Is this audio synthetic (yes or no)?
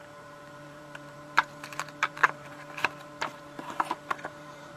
yes